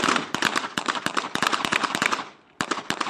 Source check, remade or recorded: recorded